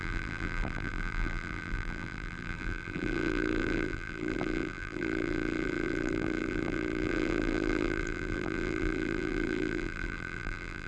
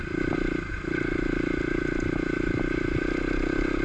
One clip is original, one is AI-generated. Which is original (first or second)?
second